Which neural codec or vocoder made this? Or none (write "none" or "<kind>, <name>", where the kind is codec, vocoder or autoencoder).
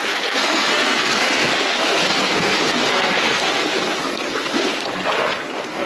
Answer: codec, SNAC